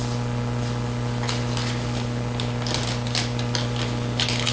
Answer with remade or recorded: recorded